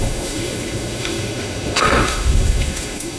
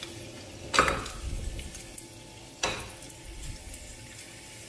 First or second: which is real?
second